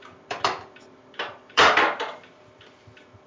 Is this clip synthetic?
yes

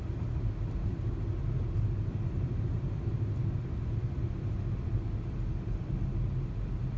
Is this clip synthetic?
no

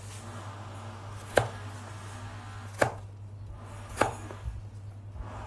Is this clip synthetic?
no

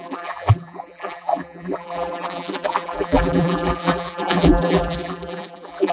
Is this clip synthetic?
yes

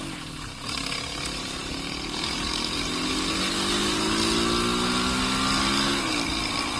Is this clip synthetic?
no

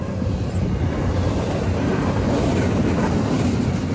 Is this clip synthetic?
no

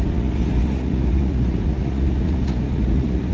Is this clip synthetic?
yes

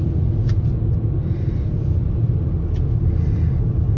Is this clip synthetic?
no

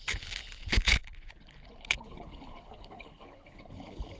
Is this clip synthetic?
yes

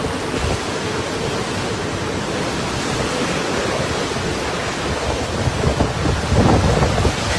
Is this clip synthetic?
no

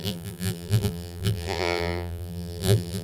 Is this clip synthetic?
yes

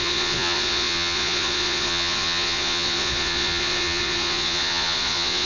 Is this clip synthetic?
yes